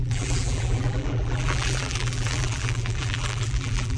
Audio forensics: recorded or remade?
remade